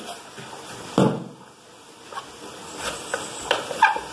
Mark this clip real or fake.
real